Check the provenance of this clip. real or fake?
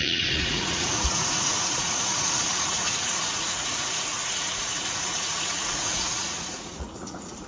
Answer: fake